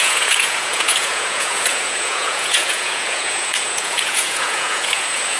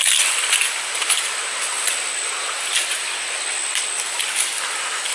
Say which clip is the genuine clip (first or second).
second